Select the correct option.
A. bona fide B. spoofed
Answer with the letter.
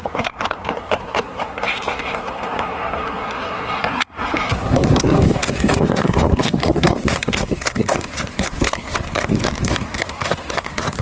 B